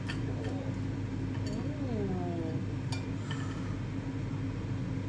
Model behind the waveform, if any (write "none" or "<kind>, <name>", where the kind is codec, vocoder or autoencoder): none